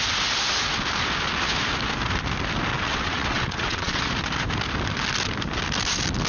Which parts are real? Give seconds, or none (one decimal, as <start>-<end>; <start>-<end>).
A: 0.0-2.7; 4.0-6.3

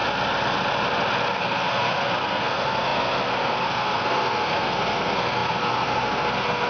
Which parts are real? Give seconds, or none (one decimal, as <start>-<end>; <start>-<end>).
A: 0.0-1.4